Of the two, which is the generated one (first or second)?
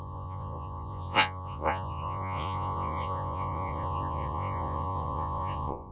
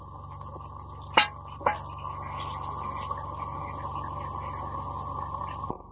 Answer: first